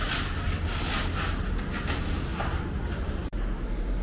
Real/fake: real